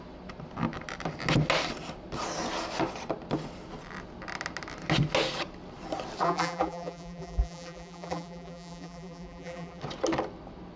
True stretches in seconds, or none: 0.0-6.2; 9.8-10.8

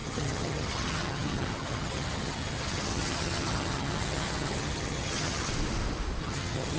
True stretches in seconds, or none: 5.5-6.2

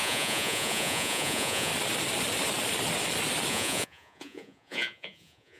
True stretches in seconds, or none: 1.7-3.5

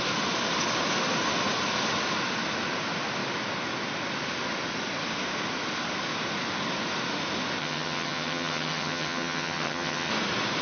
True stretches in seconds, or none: 0.0-7.6; 10.1-10.6

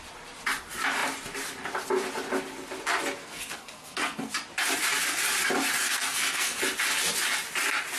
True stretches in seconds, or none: 0.0-3.2; 4.3-5.8; 6.6-8.0

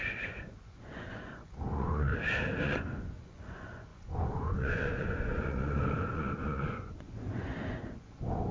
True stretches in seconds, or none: 2.1-2.6